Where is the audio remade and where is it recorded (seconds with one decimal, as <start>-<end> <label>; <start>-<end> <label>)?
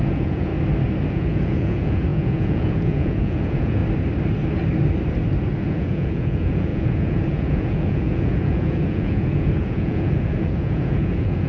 0.0-0.5 remade; 0.5-1.1 recorded; 1.1-3.8 remade; 3.8-5.6 recorded; 5.6-11.5 remade